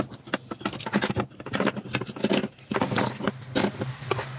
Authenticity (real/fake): real